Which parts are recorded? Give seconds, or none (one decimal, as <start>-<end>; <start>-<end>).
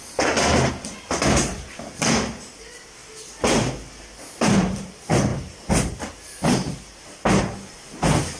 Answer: 0.0-8.4